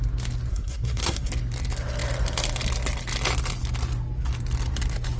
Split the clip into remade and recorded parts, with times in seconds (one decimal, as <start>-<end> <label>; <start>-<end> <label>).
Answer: 0.0-0.5 recorded; 0.5-1.3 remade; 1.3-5.2 recorded